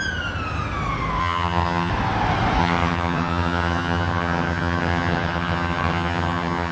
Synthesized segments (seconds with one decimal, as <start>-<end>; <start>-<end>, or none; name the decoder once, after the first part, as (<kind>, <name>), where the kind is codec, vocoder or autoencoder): 1.2-1.9 (vocoder, HiFi-GAN); 2.6-6.7